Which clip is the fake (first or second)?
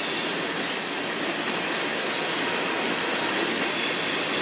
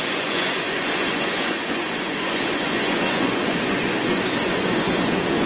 second